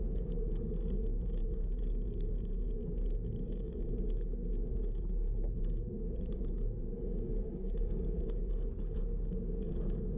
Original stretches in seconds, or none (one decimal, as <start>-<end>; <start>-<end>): none